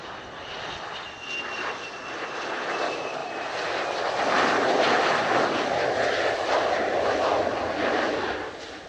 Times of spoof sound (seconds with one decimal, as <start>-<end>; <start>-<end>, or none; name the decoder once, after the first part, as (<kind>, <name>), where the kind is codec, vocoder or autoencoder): none